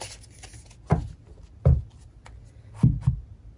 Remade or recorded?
recorded